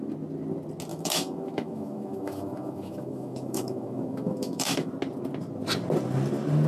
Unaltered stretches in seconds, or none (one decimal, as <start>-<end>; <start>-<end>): 0.0-0.9; 4.9-6.7